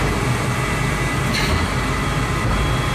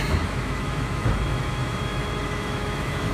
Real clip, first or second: first